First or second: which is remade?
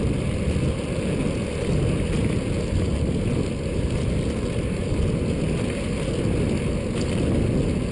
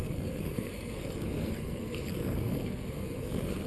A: second